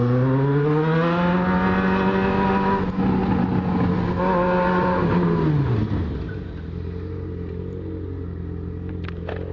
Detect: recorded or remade recorded